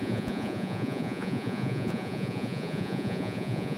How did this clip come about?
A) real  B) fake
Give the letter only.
B